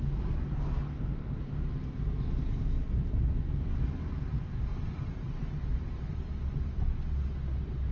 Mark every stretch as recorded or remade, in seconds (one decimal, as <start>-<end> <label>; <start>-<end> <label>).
0.0-4.7 recorded; 4.7-6.0 remade; 6.0-7.9 recorded